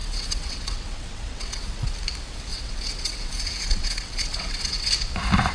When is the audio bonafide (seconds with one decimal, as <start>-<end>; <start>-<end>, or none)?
1.9-2.5; 4.9-5.5